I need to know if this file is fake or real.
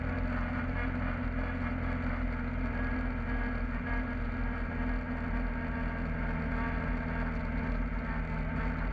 real